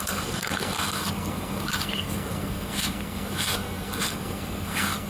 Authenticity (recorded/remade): remade